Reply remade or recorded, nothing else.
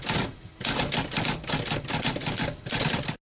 recorded